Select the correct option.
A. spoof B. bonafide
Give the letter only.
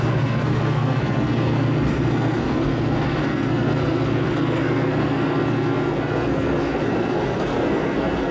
A